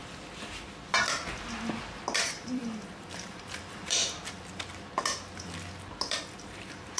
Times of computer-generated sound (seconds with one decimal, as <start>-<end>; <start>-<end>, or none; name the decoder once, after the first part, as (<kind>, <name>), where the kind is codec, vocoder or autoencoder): 2.2-4.0 (vocoder, BigVGAN v2); 6.2-7.0